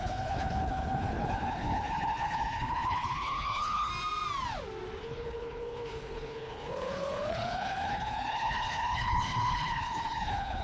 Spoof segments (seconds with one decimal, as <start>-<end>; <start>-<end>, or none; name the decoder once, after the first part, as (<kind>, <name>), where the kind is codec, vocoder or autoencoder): 0.0-3.9 (codec, HILCodec); 5.0-10.6